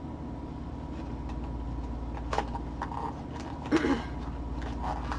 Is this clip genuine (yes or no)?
yes